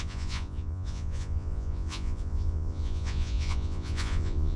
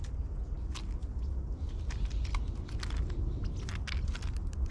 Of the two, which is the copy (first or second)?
first